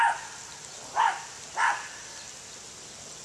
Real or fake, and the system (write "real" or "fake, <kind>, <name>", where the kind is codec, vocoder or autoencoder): real